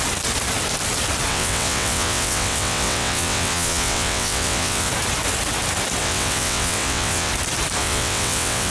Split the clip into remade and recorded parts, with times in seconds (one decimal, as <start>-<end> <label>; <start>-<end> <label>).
0.0-1.3 recorded; 1.3-4.9 remade; 4.9-6.0 recorded; 6.0-7.3 remade; 7.3-7.8 recorded; 7.8-8.7 remade